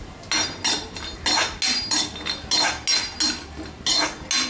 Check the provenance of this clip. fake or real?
real